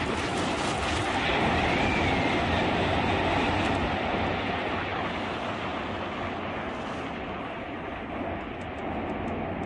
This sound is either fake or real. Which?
real